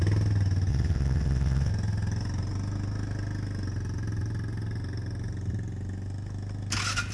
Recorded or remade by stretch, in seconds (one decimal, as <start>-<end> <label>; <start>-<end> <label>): 0.0-0.7 recorded; 0.7-1.7 remade; 1.7-7.1 recorded